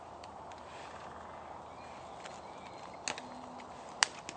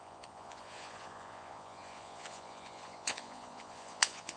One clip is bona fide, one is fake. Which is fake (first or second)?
second